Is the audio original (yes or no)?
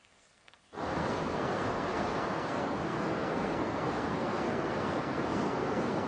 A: no